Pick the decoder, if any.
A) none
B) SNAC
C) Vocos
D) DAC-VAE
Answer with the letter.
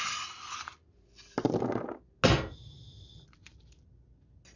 A